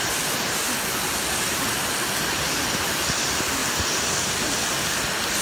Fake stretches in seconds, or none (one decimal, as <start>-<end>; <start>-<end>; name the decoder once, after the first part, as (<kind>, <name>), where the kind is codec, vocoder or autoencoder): none